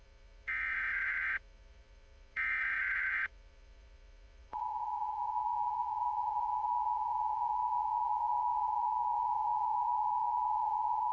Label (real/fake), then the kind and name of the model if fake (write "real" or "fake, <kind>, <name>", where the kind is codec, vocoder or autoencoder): fake, vocoder, Vocos